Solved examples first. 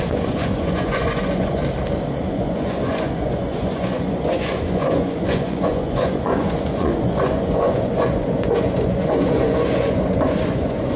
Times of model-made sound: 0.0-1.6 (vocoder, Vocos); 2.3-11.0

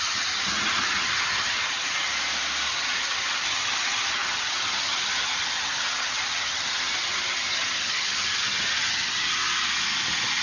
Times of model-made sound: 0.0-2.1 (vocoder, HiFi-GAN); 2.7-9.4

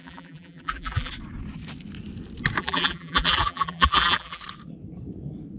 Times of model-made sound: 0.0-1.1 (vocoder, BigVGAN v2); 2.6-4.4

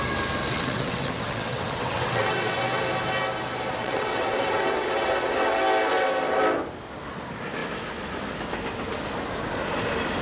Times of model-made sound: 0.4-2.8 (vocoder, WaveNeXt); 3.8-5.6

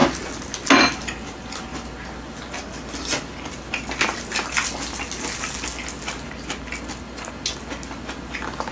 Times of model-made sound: none

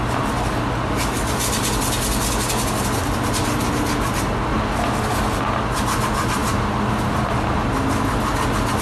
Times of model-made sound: 4.5-5.0 (vocoder, BigVGAN v2); 6.4-7.3

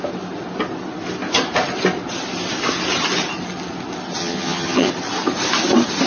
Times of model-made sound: 4.2-4.9 (vocoder, HiFi-GAN)